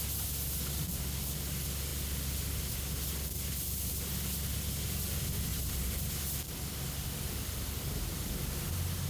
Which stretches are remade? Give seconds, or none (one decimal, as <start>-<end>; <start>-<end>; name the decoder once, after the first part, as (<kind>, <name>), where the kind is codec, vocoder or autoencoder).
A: none